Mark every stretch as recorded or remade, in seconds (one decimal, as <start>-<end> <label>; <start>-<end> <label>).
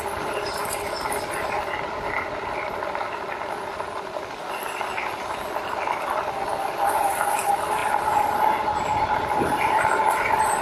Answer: 0.0-10.6 recorded